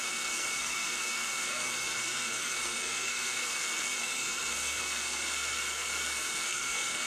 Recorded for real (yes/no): no